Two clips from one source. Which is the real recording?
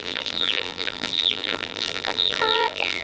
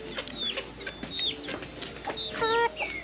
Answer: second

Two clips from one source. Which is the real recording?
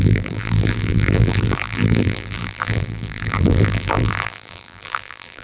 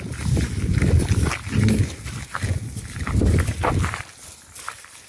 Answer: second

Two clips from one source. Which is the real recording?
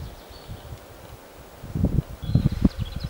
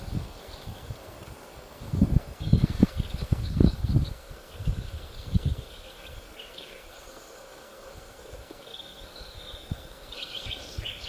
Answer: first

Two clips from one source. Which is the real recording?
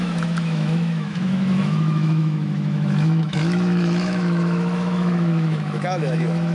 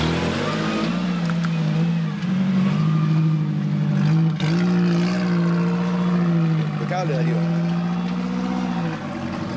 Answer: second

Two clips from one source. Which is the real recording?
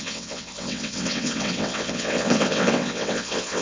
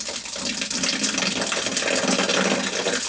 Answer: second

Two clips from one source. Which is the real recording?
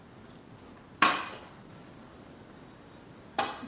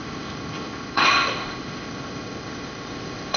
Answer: first